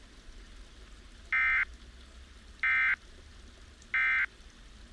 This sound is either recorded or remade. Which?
recorded